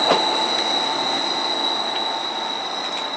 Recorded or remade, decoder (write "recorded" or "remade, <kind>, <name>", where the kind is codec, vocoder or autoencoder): recorded